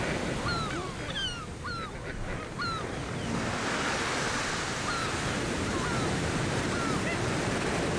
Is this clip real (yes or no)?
yes